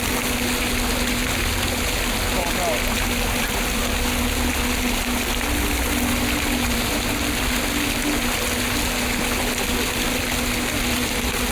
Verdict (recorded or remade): recorded